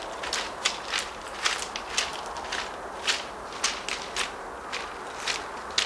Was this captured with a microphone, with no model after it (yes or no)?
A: yes